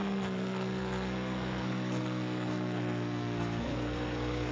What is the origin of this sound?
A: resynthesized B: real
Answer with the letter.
A